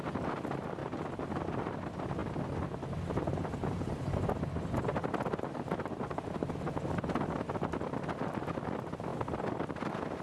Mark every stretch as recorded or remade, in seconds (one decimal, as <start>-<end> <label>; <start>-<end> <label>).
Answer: 0.0-0.8 remade; 0.8-1.6 recorded; 1.6-2.2 remade; 2.2-3.2 recorded; 3.2-10.2 remade